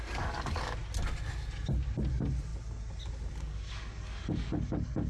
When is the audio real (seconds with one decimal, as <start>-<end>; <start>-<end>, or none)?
0.8-2.1; 2.5-3.4